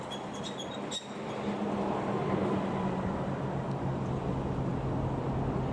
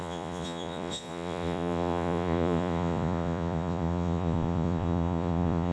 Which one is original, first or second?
first